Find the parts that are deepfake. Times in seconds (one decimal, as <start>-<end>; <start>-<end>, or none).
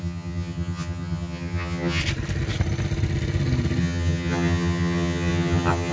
0.0-2.0; 3.8-5.9